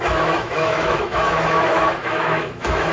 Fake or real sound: fake